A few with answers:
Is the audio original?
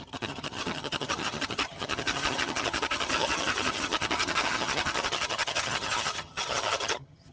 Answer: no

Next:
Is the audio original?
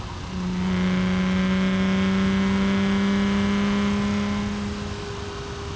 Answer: yes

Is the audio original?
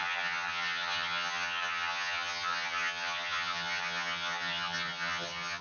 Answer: no